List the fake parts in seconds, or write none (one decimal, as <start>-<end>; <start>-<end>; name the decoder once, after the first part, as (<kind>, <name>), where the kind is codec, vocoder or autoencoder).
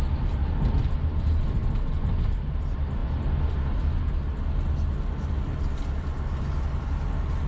none